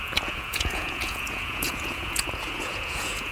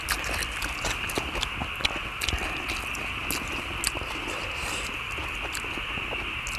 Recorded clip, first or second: second